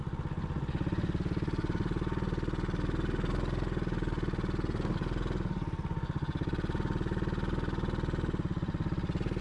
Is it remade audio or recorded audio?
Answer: recorded